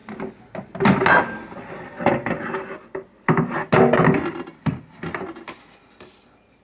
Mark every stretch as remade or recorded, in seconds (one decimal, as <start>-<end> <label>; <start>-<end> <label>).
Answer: 0.0-6.6 recorded